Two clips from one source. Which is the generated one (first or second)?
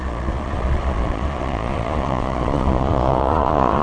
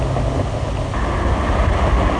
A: first